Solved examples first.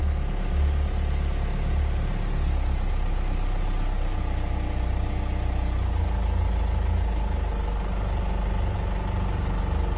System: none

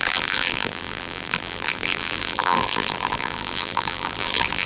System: vocoder, BigVGAN v2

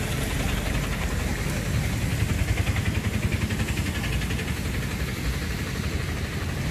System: none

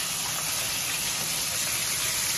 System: none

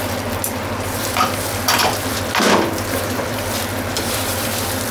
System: vocoder, BigVGAN v2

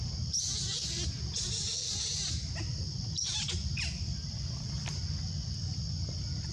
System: none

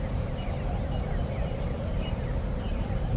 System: vocoder, BigVGAN v2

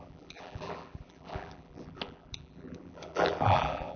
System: vocoder, BigVGAN v2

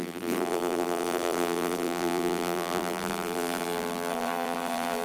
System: vocoder, BigVGAN v2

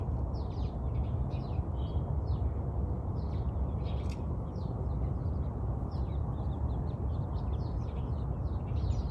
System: none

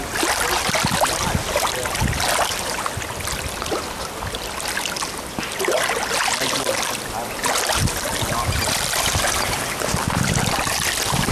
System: none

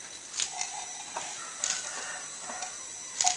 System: none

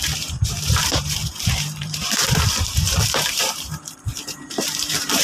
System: vocoder, BigVGAN v2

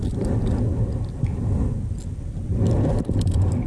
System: none